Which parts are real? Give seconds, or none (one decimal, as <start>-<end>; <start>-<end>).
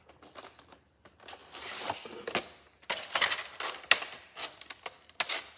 0.0-5.6